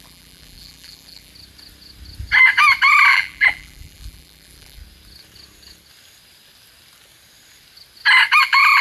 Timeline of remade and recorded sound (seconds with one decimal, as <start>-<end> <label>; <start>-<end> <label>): 0.0-1.3 remade; 1.3-3.1 recorded; 3.1-4.8 remade; 4.8-8.4 recorded; 8.4-8.8 remade